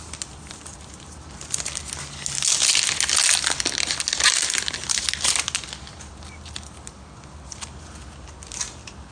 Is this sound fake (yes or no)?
no